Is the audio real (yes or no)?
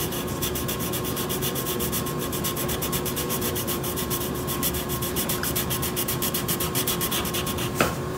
no